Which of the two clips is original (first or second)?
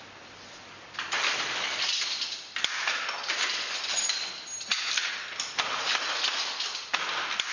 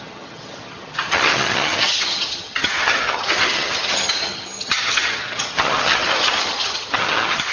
first